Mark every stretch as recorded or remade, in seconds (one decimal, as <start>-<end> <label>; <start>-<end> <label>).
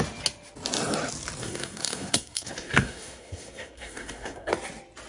0.0-1.4 recorded; 1.4-4.5 remade; 4.5-5.1 recorded